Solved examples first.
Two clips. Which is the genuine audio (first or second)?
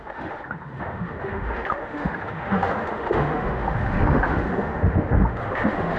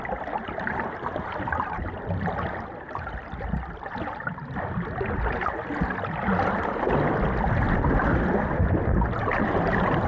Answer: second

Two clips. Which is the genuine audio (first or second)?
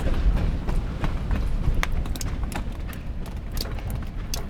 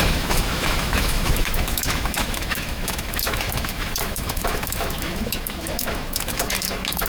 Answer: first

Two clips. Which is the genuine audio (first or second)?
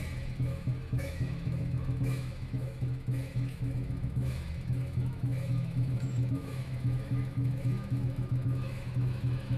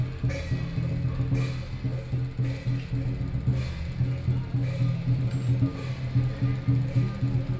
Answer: second